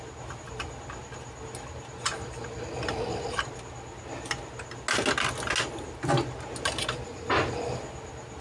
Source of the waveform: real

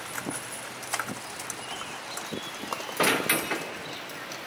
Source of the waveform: real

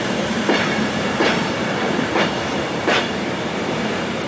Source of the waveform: fake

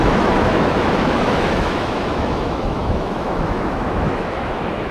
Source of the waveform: fake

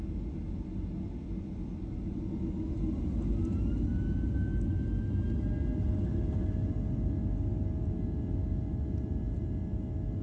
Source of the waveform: real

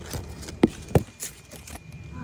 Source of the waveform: fake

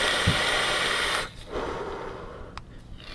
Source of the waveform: real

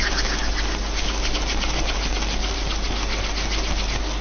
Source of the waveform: real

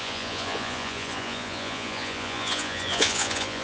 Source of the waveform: fake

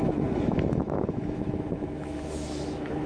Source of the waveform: fake